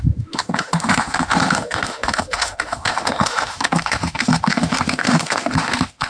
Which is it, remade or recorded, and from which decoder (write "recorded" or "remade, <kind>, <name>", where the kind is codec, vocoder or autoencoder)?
remade, autoencoder, DAC-VAE